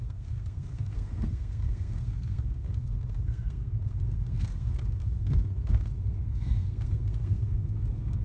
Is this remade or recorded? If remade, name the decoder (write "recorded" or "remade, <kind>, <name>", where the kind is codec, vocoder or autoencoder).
remade, codec, SNAC